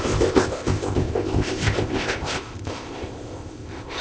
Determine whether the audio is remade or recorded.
remade